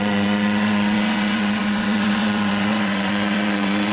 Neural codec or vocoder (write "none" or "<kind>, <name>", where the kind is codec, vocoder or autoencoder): vocoder, WaveNeXt